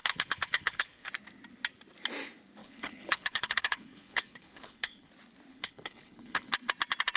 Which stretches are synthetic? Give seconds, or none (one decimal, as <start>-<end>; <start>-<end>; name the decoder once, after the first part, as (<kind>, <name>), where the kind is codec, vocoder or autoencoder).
0.0-1.1 (codec, HILCodec); 2.6-5.1; 5.5-6.5